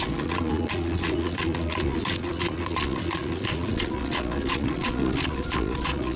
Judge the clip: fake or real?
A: fake